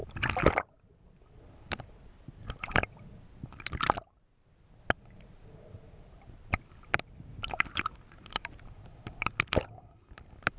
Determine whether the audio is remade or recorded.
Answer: recorded